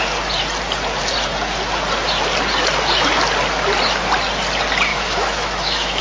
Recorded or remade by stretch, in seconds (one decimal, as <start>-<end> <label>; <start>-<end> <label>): 0.0-4.9 recorded; 4.9-6.0 remade